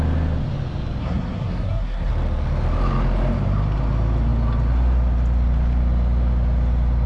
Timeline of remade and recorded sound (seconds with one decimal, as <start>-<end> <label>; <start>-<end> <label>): 0.0-1.0 recorded; 1.0-2.1 remade; 2.1-7.1 recorded